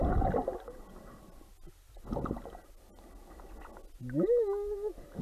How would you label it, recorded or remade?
recorded